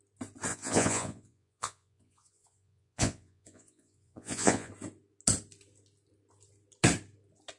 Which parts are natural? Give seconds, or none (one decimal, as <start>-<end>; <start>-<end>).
0.0-0.5; 4.7-7.6